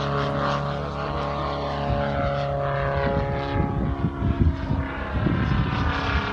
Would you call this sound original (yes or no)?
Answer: yes